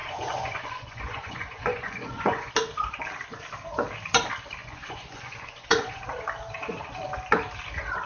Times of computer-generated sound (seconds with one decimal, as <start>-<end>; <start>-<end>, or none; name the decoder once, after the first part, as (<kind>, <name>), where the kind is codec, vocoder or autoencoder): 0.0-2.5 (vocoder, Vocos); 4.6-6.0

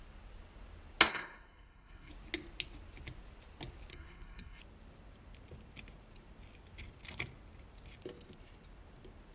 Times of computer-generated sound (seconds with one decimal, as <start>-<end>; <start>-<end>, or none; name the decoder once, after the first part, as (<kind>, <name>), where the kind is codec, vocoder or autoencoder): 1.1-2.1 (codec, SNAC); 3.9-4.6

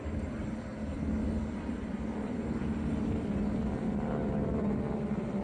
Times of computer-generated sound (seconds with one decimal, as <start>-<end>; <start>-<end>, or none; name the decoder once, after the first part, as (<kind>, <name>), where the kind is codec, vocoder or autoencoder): none

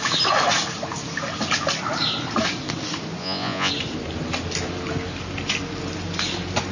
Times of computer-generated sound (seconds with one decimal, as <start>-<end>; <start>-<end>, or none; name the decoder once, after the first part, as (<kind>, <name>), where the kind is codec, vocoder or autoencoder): 3.2-3.7 (vocoder, Vocos)

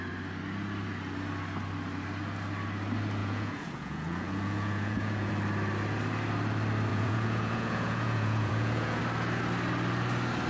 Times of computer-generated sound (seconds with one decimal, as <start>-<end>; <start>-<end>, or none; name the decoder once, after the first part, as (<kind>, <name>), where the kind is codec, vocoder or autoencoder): 3.2-5.3 (vocoder, Vocos); 6.9-9.0